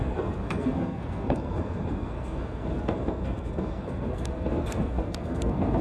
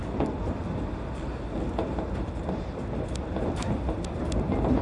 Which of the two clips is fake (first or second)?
first